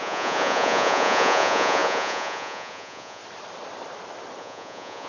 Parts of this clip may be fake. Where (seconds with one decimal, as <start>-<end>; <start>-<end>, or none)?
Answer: 0.0-3.2; 4.4-5.1